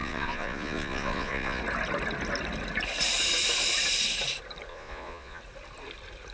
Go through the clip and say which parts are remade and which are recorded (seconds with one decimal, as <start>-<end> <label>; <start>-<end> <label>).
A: 0.0-1.6 remade; 1.6-4.7 recorded; 4.7-5.4 remade; 5.4-6.3 recorded